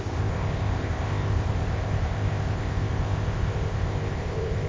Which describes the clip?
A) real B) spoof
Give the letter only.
B